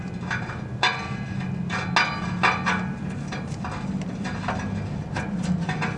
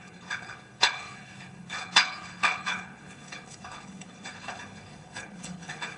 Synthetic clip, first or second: second